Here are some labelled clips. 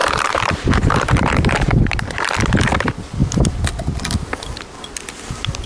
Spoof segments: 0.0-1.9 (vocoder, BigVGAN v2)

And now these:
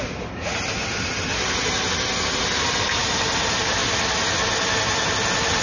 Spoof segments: none

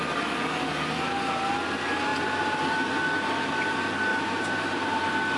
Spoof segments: 2.1-2.9 (vocoder, BigVGAN v2); 4.1-5.0

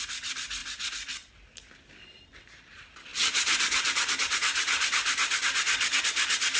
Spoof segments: 0.6-1.3 (vocoder, BigVGAN v2); 3.1-6.0

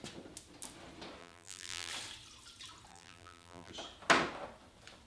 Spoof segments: 1.2-1.9 (vocoder, BigVGAN v2); 2.9-3.7

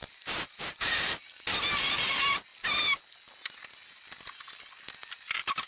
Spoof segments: 0.0-1.0 (vocoder, BigVGAN v2)